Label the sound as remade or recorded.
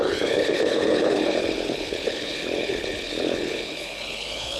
remade